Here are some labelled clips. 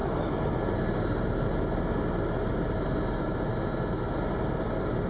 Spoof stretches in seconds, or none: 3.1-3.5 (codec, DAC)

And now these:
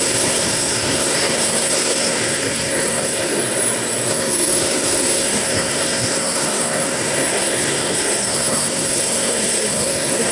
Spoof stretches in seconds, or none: 0.0-3.4 (codec, SNAC); 4.1-10.3

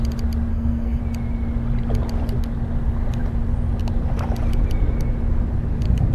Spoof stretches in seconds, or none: 0.5-1.0 (codec, SNAC)

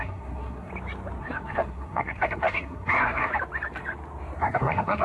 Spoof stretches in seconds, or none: 0.0-0.7 (codec, SNAC); 1.2-3.3; 4.4-5.0

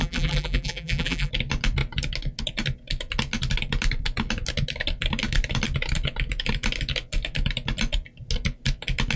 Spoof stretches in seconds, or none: 0.0-1.3 (vocoder, BigVGAN v2)